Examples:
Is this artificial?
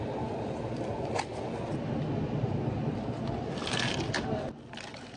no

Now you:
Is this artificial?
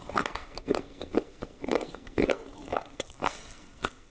yes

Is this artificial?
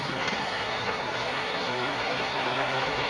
yes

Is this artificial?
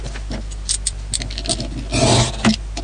no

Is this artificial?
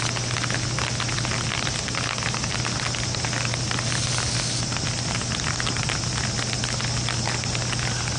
no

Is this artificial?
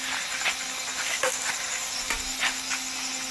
no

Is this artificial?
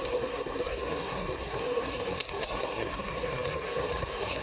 yes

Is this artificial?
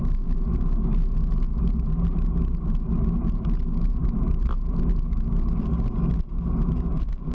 no